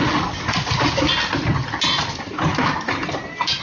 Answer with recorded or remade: recorded